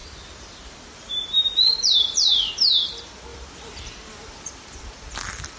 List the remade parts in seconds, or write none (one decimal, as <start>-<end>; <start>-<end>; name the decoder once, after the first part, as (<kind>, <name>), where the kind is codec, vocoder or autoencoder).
0.0-2.5 (vocoder, BigVGAN v2); 3.3-4.8